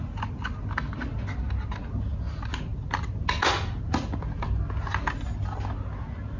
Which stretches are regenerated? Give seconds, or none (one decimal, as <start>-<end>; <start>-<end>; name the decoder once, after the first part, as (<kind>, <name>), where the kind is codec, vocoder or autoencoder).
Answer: none